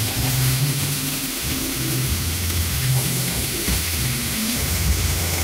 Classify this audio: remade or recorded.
remade